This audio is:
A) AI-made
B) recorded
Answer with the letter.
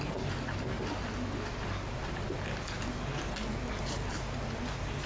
B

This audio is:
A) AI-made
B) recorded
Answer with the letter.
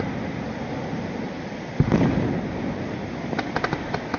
B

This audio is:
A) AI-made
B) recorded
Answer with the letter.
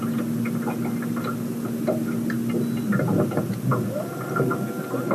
B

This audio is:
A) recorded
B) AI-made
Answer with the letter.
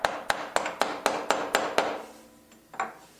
A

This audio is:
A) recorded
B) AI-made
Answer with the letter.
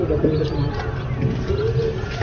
A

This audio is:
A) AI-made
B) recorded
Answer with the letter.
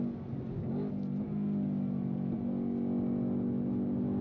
B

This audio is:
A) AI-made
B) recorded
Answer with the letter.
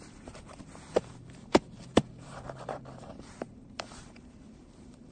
A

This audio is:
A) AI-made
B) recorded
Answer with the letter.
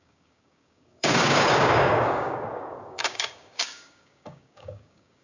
A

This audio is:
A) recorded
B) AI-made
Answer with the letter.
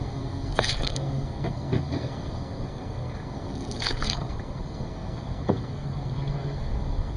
B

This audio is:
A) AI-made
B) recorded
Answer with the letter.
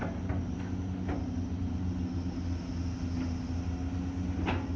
B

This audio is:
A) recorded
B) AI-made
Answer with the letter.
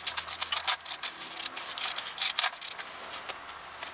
A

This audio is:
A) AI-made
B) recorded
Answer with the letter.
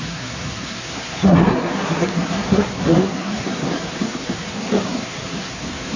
A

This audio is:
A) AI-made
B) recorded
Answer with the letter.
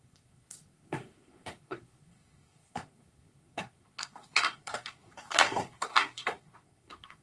A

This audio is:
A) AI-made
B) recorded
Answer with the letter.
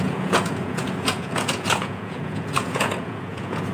A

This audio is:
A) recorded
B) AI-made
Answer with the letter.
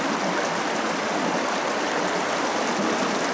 A